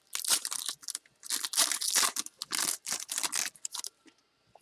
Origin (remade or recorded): recorded